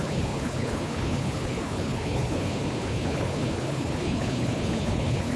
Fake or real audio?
fake